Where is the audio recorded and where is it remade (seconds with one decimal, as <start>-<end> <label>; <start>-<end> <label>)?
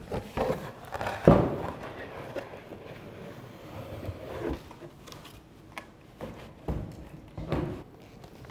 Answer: 0.0-2.7 remade; 2.7-5.6 recorded; 5.6-8.5 remade